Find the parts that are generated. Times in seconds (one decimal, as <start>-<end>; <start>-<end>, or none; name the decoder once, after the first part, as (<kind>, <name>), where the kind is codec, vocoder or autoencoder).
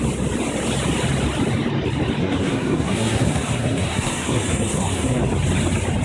2.2-5.2 (codec, SNAC)